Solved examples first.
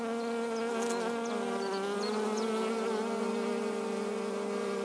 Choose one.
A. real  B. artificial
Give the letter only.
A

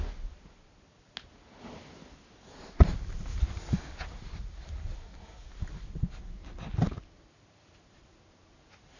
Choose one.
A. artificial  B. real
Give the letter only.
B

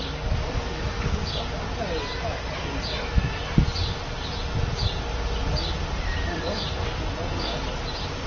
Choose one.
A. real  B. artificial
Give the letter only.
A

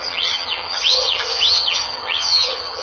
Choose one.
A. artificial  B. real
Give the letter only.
A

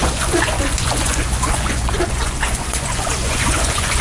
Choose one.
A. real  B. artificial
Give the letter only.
B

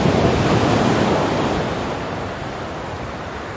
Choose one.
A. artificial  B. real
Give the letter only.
B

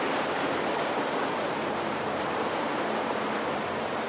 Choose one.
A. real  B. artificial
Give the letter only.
B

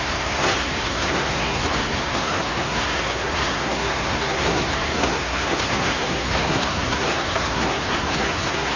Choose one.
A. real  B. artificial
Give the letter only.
B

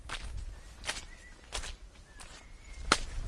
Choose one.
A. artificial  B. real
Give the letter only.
B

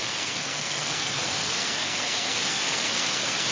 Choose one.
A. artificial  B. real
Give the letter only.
A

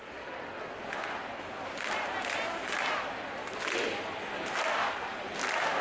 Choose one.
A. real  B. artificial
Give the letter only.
A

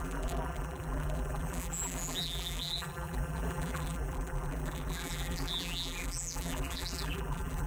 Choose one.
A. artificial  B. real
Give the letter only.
A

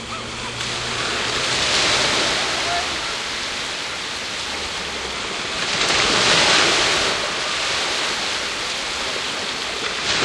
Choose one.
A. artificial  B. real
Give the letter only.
B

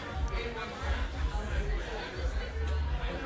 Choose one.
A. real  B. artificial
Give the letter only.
A